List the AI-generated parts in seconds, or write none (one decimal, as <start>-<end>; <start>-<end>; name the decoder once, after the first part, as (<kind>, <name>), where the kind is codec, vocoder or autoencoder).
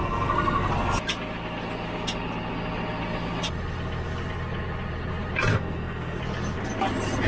0.0-0.7 (codec, SNAC); 5.5-6.2